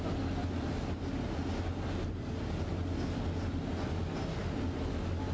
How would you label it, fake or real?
real